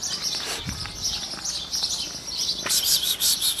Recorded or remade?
recorded